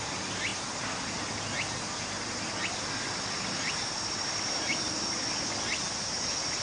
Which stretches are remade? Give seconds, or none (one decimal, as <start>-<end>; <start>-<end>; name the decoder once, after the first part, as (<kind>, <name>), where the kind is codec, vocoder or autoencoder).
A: none